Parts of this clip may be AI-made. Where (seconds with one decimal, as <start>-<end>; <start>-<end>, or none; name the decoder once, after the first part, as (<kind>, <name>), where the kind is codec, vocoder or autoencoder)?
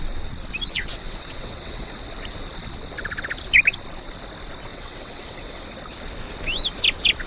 0.9-1.9 (vocoder, WaveNeXt); 4.7-5.6